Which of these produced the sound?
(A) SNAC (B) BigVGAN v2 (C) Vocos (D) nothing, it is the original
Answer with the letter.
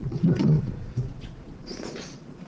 C